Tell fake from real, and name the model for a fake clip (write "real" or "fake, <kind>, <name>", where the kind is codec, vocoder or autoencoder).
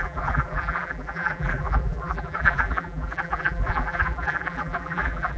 fake, vocoder, BigVGAN v2